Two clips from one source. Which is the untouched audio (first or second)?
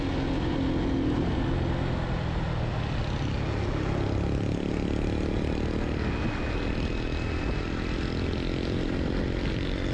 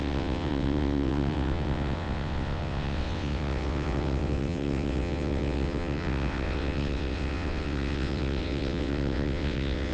first